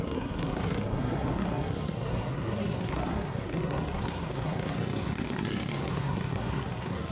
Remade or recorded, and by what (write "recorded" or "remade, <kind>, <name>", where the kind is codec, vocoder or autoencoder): remade, codec, SNAC